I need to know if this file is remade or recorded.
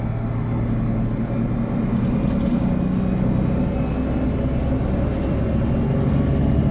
recorded